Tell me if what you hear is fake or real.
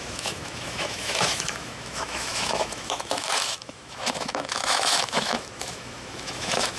fake